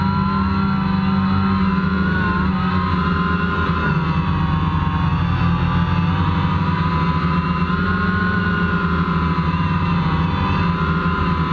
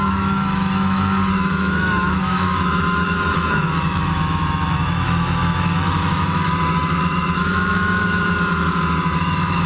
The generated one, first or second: second